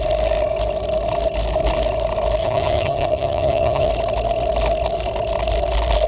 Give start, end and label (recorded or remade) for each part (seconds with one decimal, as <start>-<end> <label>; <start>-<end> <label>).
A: 0.0-2.4 recorded; 2.4-3.9 remade; 3.9-6.1 recorded